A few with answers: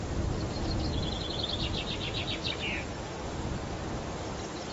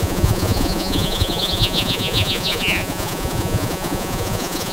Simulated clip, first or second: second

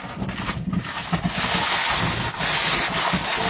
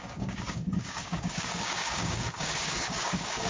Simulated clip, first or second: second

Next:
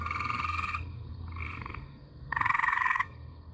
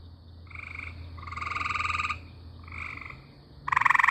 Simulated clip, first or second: first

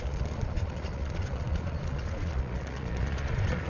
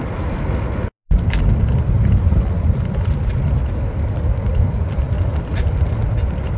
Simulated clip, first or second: first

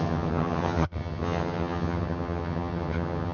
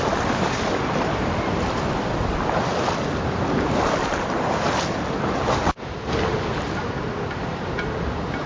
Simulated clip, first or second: first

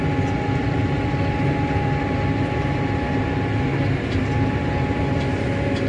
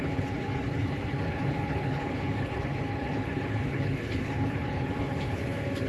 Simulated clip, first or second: second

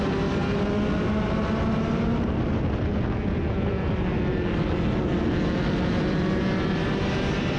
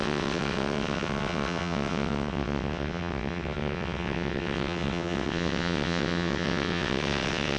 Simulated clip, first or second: second